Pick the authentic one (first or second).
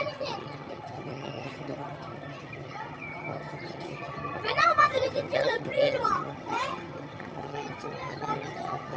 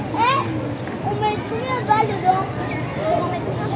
second